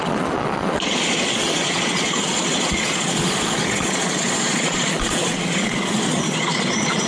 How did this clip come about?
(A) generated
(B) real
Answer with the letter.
A